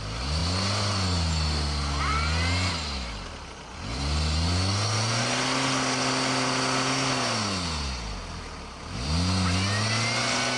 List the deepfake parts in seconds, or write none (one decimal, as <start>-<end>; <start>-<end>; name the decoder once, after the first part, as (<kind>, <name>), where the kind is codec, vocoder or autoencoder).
none